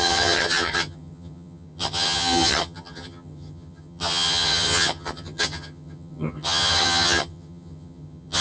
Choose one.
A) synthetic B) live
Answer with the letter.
A